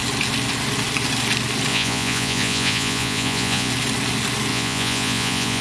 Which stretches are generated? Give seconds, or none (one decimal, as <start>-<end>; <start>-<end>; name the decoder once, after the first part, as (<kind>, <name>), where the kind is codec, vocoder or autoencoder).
1.7-3.7 (vocoder, Vocos); 4.5-5.6